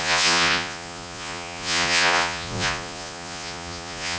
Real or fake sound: fake